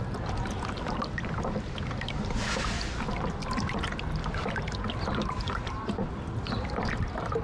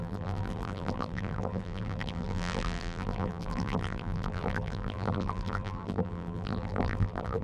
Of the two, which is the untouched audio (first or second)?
first